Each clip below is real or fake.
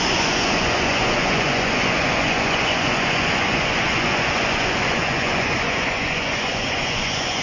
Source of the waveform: fake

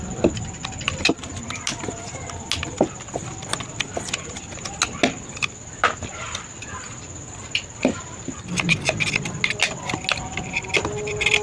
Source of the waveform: real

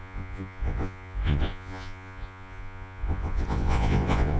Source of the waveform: fake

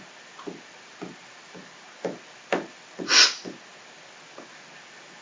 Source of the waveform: real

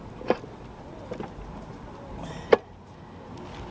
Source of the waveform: real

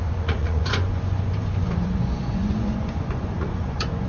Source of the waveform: fake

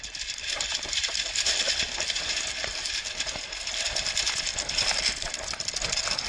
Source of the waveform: real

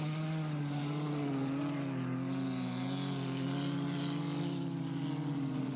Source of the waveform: real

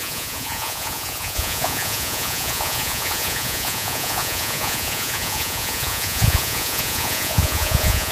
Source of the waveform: fake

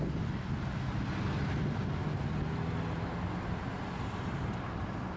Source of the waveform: real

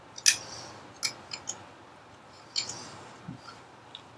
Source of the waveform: real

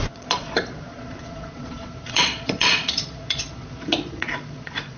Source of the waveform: fake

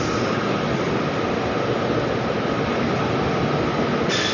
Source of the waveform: real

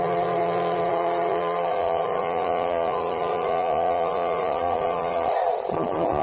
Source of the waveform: fake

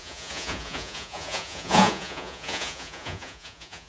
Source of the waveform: fake